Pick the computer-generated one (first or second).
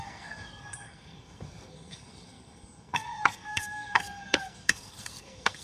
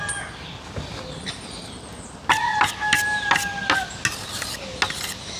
first